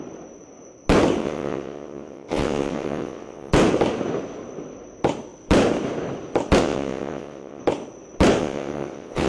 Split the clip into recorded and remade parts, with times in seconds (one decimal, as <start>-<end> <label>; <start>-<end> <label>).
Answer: 0.0-1.2 recorded; 1.2-3.5 remade; 3.5-6.6 recorded; 6.6-7.6 remade; 7.6-8.4 recorded; 8.4-9.3 remade